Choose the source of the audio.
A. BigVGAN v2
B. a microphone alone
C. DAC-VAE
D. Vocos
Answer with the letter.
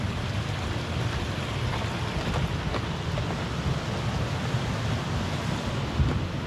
B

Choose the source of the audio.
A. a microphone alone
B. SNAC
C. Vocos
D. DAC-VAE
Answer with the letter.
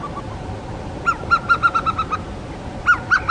A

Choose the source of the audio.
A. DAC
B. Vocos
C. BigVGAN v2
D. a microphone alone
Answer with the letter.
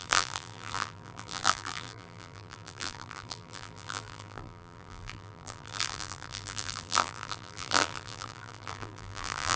C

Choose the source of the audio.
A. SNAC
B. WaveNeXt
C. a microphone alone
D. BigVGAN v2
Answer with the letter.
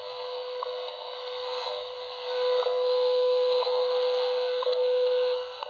A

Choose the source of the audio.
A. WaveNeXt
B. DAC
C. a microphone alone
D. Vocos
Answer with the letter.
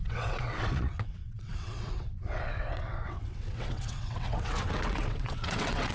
A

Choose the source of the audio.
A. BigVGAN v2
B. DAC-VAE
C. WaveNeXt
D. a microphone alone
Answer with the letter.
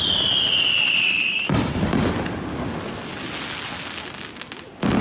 D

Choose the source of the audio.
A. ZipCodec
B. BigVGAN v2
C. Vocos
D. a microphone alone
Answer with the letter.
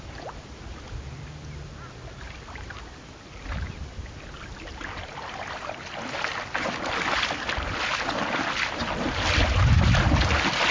D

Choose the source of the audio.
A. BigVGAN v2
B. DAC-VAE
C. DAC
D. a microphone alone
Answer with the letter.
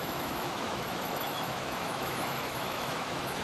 B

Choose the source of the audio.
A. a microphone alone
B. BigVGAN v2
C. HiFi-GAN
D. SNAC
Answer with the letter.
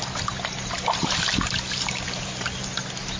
A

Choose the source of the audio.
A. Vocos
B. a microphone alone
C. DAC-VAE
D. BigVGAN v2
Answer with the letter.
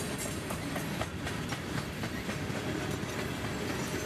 B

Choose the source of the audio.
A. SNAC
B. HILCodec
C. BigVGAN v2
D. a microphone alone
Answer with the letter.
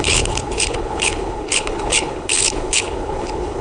B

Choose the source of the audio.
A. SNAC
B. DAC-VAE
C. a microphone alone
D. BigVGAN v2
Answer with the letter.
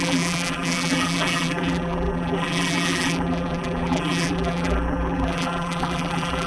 D